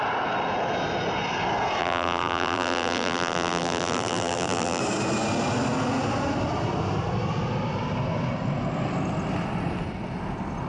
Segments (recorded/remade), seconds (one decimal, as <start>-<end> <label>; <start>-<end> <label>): 0.0-1.8 recorded; 1.8-4.8 remade; 4.8-10.7 recorded